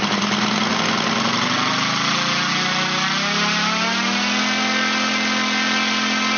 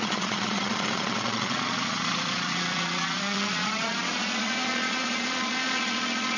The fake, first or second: second